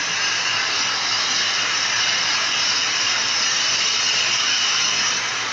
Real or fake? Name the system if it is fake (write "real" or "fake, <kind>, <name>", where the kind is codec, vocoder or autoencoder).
fake, vocoder, BigVGAN v2